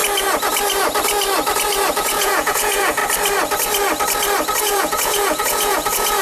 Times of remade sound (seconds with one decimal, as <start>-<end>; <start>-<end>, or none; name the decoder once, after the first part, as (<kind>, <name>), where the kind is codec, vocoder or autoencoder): 1.9-3.0 (vocoder, Vocos); 4.6-6.2